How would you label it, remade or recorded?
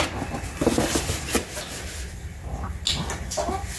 recorded